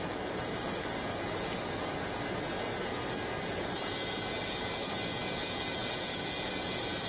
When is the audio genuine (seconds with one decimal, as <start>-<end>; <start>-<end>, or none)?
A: 0.0-7.1

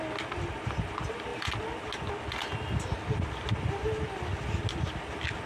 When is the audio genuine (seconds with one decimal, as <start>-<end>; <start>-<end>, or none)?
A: 0.0-5.5